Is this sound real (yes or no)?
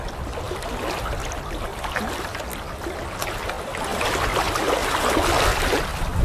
yes